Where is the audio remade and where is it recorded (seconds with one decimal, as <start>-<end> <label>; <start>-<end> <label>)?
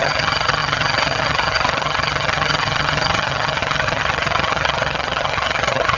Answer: 0.0-6.0 remade